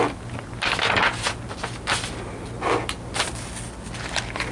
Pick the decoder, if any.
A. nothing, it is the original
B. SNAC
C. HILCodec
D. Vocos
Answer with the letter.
A